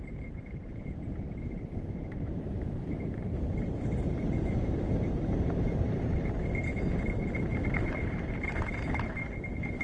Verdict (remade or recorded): remade